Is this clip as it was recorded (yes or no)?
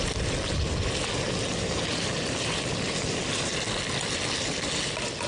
yes